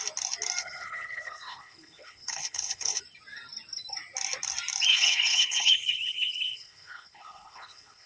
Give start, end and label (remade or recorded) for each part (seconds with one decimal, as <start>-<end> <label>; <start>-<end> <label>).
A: 0.0-0.6 recorded; 0.6-3.0 remade; 3.0-4.9 recorded; 4.9-8.1 remade